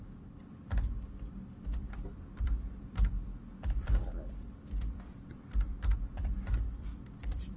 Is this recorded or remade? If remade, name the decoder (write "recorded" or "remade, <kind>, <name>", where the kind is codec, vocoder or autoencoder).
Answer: remade, vocoder, BigVGAN v2